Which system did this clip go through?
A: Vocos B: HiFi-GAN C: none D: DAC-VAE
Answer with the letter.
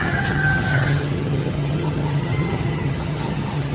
B